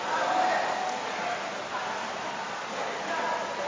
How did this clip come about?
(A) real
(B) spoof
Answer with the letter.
A